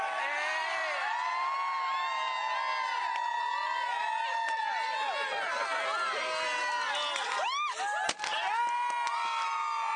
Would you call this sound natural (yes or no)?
yes